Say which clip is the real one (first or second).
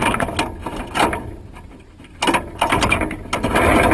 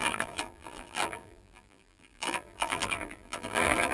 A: first